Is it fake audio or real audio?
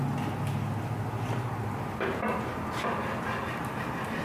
real